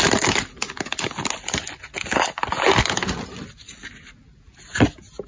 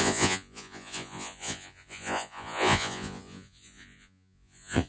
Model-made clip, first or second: second